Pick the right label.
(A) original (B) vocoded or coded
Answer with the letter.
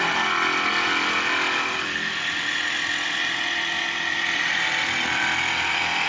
A